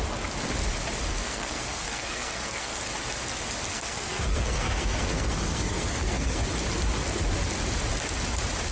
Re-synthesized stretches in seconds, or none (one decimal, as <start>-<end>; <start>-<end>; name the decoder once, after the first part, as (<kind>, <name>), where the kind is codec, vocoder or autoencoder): 1.1-2.8 (codec, SNAC); 3.7-6.4